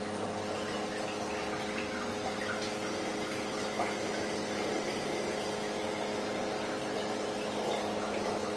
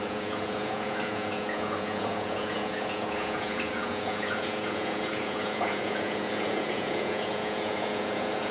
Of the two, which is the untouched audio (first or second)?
first